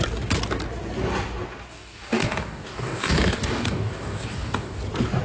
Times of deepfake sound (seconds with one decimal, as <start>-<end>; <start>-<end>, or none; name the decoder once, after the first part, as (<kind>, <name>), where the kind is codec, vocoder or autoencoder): 1.7-4.8 (codec, DAC)

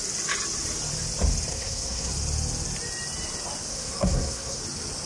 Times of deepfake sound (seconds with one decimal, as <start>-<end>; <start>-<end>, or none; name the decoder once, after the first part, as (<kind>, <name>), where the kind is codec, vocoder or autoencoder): 1.5-2.1 (codec, SNAC); 3.7-4.6

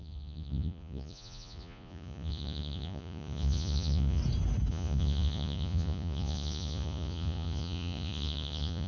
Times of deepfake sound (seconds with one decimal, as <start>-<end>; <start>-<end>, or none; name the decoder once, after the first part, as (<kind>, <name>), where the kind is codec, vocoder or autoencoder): 0.0-4.2 (vocoder, Vocos); 4.7-8.9